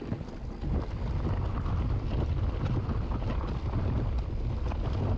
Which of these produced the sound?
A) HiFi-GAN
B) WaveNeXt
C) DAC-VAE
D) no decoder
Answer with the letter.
D